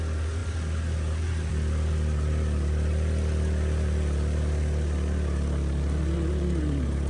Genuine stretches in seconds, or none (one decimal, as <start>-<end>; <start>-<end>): 0.0-7.1